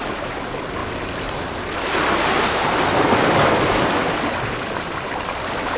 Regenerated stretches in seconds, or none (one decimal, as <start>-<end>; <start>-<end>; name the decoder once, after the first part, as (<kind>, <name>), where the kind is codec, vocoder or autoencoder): none